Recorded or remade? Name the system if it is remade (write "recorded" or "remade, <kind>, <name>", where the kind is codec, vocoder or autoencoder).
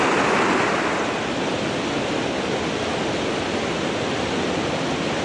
recorded